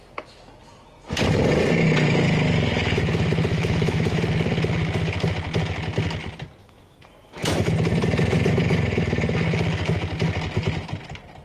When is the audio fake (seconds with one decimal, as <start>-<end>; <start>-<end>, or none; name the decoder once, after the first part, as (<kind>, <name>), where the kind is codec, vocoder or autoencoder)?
3.5-4.2 (autoencoder, DAC-VAE); 6.6-7.7

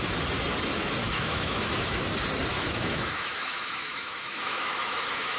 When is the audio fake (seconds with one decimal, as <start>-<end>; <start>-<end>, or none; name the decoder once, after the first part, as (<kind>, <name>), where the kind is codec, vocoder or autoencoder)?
1.0-2.0 (autoencoder, DAC-VAE); 2.5-5.4

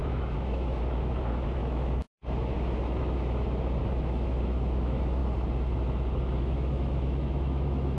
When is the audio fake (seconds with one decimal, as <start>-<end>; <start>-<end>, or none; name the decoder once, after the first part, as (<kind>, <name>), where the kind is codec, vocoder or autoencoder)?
0.0-5.2 (autoencoder, DAC-VAE); 6.4-8.0

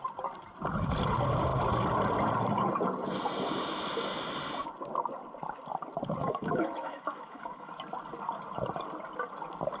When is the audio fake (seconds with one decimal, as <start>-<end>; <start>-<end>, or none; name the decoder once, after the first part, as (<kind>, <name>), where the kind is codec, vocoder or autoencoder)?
6.2-7.7 (autoencoder, DAC-VAE)

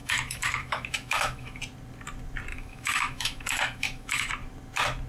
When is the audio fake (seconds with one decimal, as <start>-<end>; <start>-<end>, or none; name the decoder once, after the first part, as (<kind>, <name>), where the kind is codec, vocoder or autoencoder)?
0.0-1.6 (autoencoder, DAC-VAE); 2.5-4.3

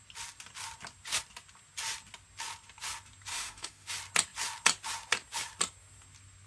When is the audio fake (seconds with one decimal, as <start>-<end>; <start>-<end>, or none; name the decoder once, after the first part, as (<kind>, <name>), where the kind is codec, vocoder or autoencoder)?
3.3-3.9 (autoencoder, DAC-VAE)

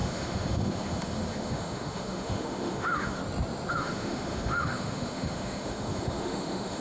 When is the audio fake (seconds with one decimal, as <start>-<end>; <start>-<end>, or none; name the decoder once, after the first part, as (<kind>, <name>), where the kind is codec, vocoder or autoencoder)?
0.0-3.2 (autoencoder, DAC-VAE); 3.7-6.8